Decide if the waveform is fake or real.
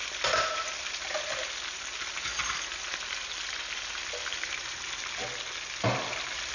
real